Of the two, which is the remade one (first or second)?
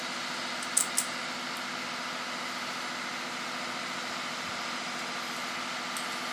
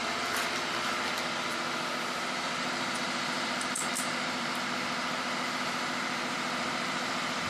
second